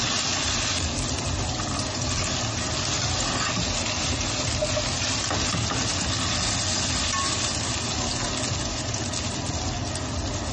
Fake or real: real